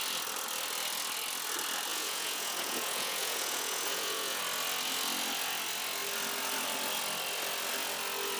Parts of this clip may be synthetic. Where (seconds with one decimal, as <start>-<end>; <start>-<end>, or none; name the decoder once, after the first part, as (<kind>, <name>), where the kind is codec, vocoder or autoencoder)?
1.9-4.4 (vocoder, Vocos)